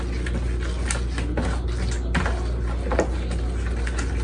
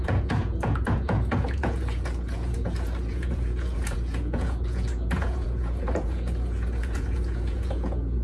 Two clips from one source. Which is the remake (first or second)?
second